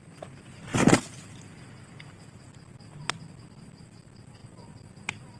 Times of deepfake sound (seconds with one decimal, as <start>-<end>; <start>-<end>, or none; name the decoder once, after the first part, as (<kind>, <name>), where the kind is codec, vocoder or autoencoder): none

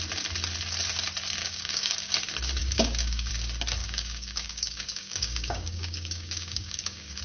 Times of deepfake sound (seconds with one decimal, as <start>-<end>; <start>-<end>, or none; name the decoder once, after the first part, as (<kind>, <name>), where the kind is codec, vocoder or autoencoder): 1.4-2.1 (codec, DAC); 2.6-3.3; 3.8-7.2

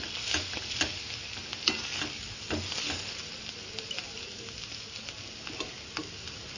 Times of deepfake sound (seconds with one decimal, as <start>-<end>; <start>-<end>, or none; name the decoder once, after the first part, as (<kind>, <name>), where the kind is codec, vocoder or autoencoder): none

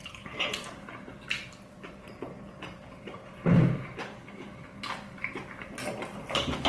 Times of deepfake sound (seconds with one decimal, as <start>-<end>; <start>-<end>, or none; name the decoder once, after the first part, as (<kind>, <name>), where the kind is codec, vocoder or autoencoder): 4.0-4.5 (codec, DAC); 6.3-6.7

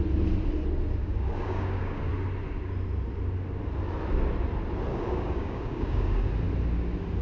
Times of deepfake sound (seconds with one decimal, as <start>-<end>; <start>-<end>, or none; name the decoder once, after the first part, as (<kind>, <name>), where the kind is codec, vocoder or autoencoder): 1.0-2.1 (codec, DAC); 4.9-6.3

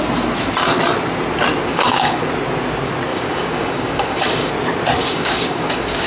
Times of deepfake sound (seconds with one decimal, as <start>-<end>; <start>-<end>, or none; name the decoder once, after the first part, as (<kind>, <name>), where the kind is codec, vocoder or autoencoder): 1.7-2.2 (codec, DAC); 3.1-4.5; 5.0-6.1